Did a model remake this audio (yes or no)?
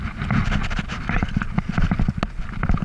no